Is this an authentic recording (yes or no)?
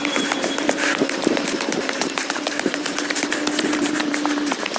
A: no